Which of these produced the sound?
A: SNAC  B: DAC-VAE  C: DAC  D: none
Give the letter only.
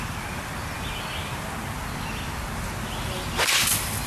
D